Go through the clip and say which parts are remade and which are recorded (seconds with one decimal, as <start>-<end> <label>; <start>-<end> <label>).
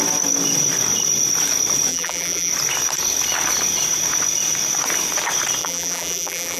0.0-1.9 recorded; 1.9-2.5 remade; 2.5-5.6 recorded; 5.6-6.6 remade